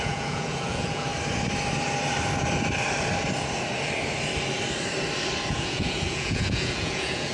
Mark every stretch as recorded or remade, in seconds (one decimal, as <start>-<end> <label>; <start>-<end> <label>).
0.0-1.1 remade; 1.1-5.5 recorded; 5.5-7.3 remade

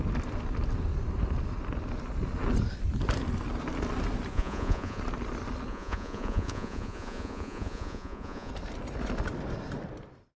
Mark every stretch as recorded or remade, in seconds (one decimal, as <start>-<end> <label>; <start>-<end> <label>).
0.0-4.3 recorded; 4.3-5.0 remade; 5.0-5.7 recorded; 5.7-8.5 remade; 8.5-10.4 recorded

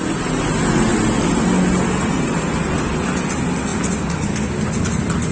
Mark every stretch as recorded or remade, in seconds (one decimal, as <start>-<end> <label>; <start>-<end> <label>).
0.0-5.3 recorded

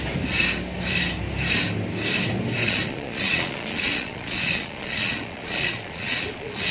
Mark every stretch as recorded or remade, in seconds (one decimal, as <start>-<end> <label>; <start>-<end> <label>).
0.0-2.6 recorded; 2.6-6.7 remade

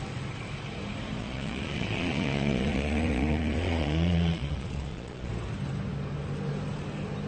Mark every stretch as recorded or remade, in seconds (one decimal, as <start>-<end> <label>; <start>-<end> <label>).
0.0-1.2 recorded; 1.2-5.3 remade; 5.3-7.3 recorded

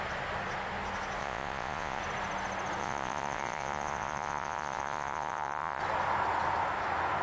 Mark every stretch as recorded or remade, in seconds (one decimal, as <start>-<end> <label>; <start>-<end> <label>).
0.0-1.2 recorded; 1.2-2.0 remade; 2.0-2.8 recorded; 2.8-5.8 remade; 5.8-7.2 recorded